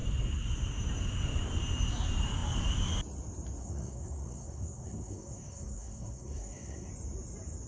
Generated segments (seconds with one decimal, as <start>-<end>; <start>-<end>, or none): 3.6-6.9